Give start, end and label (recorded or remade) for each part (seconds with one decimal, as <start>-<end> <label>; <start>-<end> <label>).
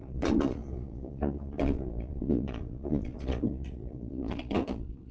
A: 0.0-5.1 remade